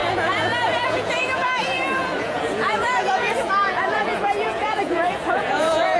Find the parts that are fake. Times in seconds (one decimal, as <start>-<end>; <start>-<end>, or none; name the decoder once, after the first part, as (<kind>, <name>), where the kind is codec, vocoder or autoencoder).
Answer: 0.0-6.0 (vocoder, Vocos)